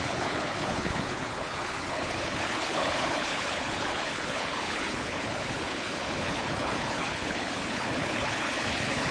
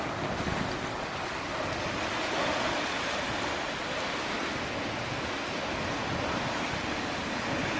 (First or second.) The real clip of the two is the second